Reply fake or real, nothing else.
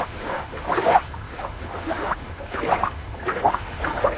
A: fake